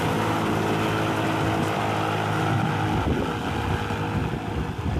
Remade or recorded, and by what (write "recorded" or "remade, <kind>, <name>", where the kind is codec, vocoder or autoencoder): recorded